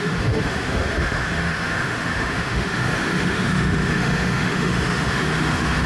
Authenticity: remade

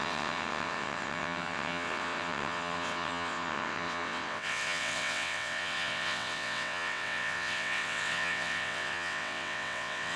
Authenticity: remade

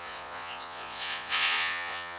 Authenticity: remade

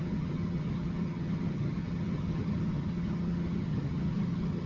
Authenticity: remade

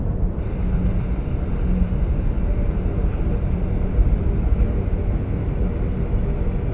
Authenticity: recorded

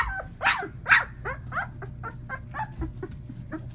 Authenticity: recorded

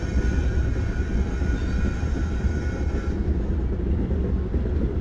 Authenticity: recorded